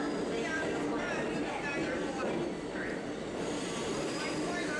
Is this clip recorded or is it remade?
recorded